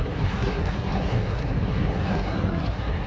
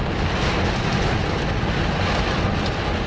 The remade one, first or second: first